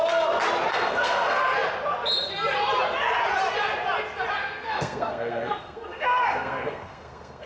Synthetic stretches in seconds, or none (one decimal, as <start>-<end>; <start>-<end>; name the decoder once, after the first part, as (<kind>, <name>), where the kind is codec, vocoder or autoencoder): 0.7-1.4 (codec, SNAC); 4.4-7.5